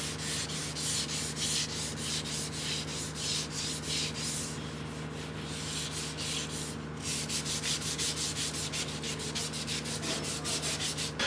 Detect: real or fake real